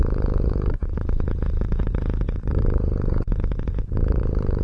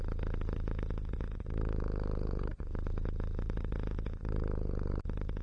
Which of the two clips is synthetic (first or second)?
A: first